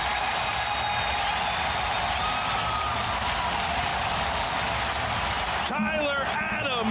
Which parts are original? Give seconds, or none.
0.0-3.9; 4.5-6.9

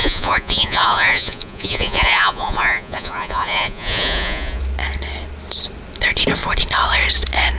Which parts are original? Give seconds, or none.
4.6-7.6

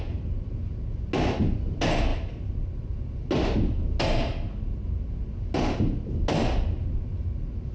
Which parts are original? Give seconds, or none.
0.0-7.7

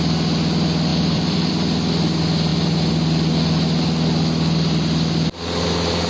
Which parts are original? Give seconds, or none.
0.0-0.9; 1.5-6.1